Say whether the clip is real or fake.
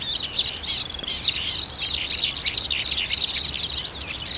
real